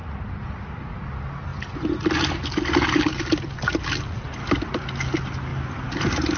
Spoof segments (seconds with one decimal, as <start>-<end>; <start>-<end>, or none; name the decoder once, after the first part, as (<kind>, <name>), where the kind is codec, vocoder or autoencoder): none